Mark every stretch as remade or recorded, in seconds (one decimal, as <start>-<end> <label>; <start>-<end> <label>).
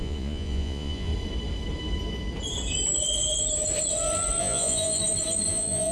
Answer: 0.0-1.1 remade; 1.1-4.4 recorded; 4.4-5.0 remade; 5.0-5.5 recorded; 5.5-5.9 remade